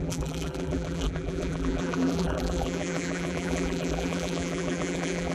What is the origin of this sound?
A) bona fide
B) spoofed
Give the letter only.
B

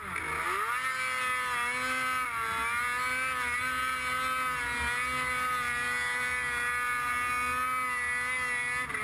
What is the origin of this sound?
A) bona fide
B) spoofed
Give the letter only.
A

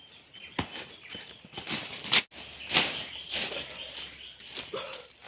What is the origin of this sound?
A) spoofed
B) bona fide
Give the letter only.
B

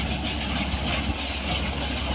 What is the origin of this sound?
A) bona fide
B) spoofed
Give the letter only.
A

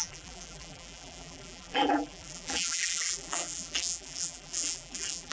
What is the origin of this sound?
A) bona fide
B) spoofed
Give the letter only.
B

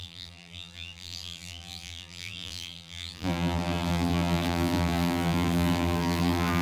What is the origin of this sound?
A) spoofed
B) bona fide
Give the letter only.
A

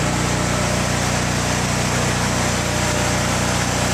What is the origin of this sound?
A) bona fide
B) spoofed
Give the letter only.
A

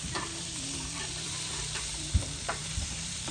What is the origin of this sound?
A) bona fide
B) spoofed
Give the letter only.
B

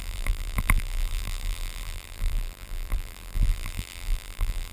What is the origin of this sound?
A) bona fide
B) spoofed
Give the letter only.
B